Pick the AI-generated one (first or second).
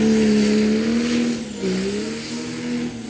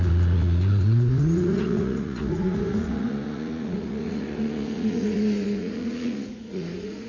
second